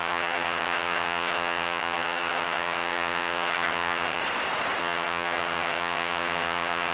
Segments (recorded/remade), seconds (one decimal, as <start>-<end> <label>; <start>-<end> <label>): 0.0-4.2 remade; 4.2-4.8 recorded; 4.8-6.9 remade